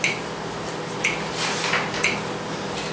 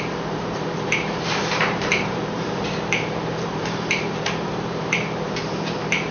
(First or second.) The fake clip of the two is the second